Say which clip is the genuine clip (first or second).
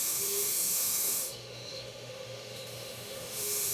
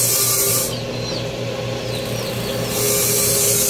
second